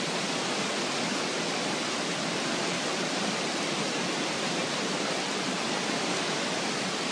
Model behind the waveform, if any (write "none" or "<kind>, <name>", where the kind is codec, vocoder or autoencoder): none